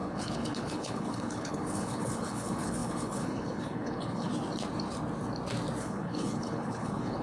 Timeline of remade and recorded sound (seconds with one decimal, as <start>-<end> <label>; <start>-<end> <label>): 0.0-4.3 remade; 4.3-5.8 recorded; 5.8-7.2 remade